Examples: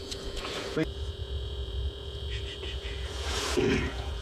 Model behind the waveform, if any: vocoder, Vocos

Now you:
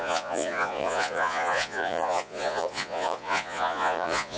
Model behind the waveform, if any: vocoder, Vocos